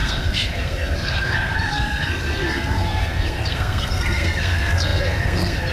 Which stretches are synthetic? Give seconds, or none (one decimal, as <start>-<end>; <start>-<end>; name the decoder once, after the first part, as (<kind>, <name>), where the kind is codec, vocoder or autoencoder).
0.0-5.7 (codec, SNAC)